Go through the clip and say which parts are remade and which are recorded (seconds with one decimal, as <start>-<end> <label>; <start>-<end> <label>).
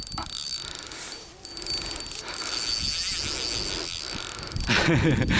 0.0-5.4 recorded